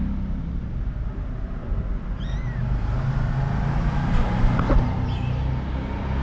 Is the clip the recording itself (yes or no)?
yes